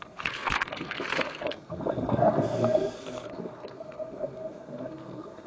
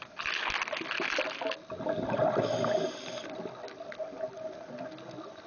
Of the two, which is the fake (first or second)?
first